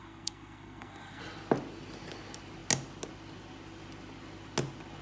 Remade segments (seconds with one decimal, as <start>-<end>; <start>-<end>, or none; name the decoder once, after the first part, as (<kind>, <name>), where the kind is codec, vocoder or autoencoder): 0.0-1.2 (codec, SNAC)